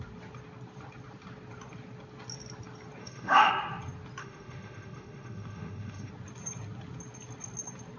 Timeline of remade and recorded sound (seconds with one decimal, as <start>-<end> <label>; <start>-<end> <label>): 0.0-3.0 recorded; 3.0-3.5 remade; 3.5-4.2 recorded; 4.2-6.1 remade; 6.1-8.0 recorded